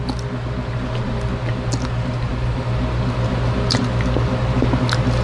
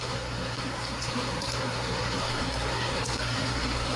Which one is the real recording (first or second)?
first